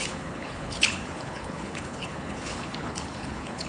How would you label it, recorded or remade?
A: remade